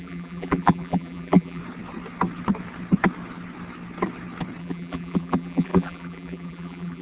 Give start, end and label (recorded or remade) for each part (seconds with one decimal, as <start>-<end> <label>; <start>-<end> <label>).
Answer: 0.0-1.6 remade; 1.6-4.6 recorded; 4.6-7.0 remade